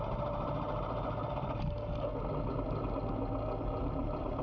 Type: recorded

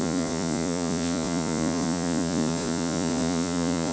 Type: remade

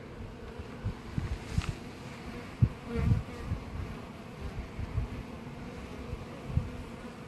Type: recorded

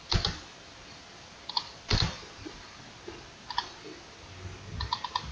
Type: recorded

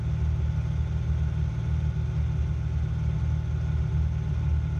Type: recorded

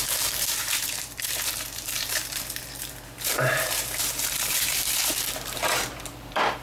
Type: remade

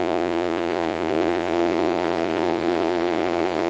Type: remade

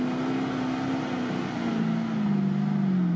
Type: recorded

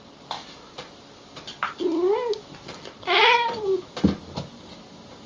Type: recorded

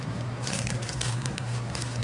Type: remade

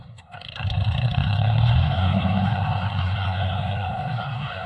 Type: remade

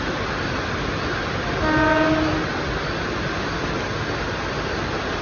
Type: recorded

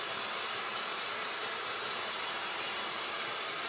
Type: remade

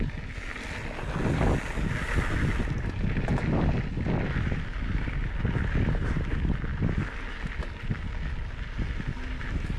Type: recorded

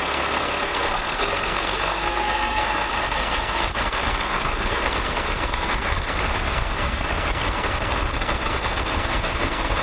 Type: remade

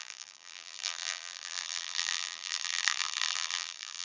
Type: remade